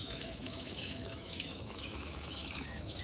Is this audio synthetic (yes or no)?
yes